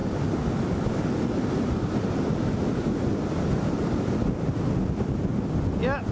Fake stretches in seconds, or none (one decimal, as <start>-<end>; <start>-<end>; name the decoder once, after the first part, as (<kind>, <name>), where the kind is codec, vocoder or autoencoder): none